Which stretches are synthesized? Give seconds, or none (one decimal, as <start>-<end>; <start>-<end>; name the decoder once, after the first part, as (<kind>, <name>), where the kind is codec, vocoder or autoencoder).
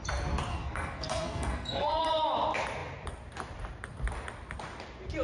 0.5-2.1 (codec, SNAC)